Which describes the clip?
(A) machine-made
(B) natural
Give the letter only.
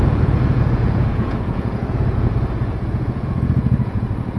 A